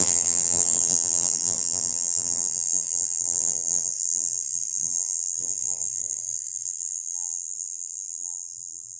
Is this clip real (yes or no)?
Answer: no